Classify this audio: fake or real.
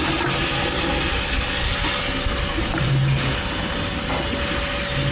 real